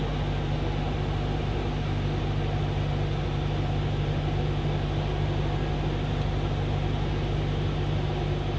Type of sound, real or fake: real